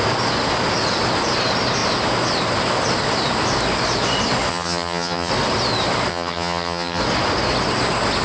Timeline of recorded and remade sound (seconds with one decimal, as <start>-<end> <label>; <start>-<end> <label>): 0.0-4.5 recorded; 4.5-5.3 remade; 5.3-6.1 recorded; 6.1-7.0 remade; 7.0-8.2 recorded